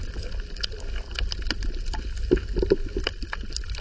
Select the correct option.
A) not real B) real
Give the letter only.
B